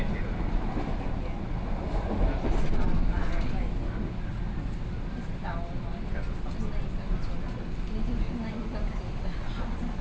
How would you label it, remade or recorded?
recorded